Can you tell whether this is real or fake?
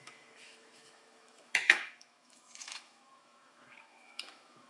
fake